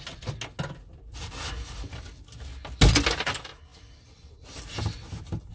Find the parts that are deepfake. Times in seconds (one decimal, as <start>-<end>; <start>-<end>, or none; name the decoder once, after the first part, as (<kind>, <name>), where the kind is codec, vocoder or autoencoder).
none